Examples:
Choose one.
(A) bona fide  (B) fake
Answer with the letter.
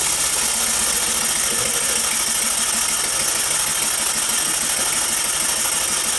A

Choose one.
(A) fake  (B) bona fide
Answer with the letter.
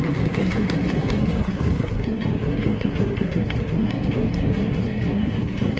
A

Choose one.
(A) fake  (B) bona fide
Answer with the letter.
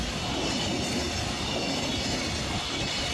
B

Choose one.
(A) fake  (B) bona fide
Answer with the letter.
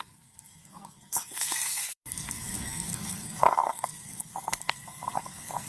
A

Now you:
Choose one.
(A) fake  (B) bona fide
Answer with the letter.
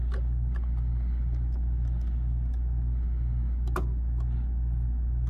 B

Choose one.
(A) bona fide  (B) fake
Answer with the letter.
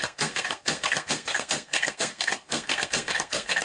B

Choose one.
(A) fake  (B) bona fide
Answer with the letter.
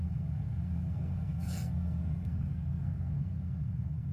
A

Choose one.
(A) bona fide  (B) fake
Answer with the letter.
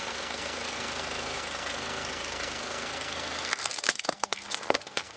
B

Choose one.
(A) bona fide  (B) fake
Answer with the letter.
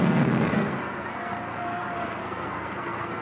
B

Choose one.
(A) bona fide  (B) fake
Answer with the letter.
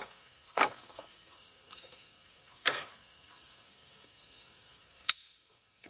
B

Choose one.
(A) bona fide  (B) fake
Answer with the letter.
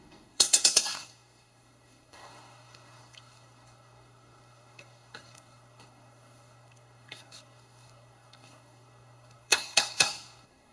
B